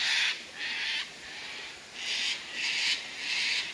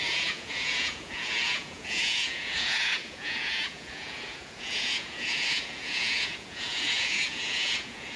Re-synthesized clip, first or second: second